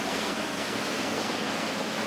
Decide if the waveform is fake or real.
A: fake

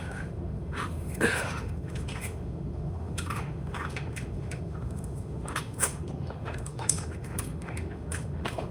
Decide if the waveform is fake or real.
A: fake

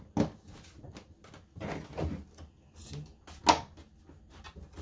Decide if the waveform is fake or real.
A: real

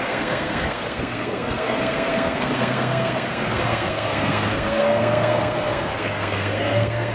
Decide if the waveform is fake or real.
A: fake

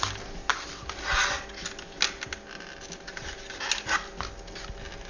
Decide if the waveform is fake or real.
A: real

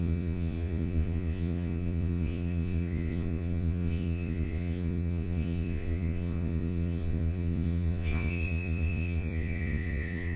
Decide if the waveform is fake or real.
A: fake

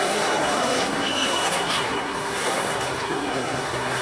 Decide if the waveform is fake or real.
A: fake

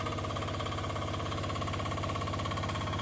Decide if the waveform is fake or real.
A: real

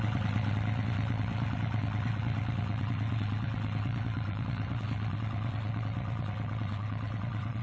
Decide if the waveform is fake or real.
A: fake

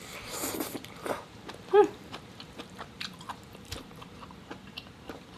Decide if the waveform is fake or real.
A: fake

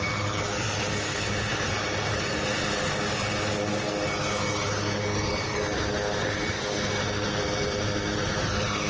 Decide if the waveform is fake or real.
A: real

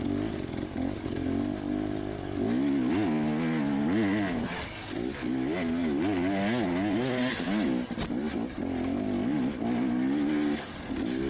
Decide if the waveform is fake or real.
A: real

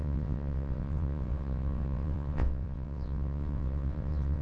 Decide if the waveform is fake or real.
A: fake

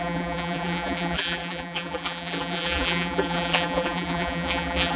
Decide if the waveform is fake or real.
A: fake